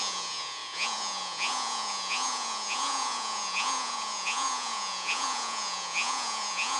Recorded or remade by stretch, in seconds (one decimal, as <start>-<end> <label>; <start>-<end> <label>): 0.0-6.8 remade